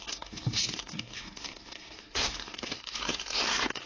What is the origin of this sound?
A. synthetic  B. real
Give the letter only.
A